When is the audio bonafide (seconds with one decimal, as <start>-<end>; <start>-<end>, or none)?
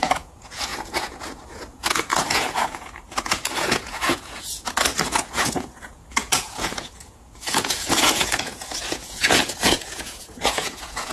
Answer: none